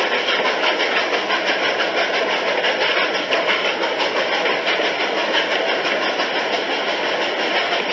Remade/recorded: recorded